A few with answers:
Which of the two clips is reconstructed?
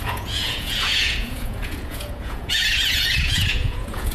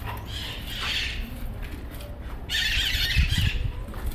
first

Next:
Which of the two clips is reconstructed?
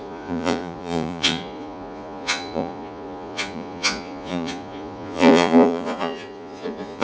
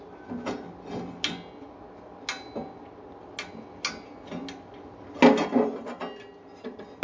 first